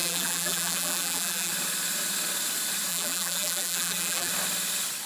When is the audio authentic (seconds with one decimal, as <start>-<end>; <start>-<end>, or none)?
1.5-2.9; 4.3-5.1